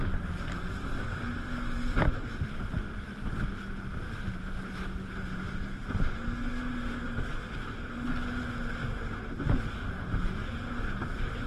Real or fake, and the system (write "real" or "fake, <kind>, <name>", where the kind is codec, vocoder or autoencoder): real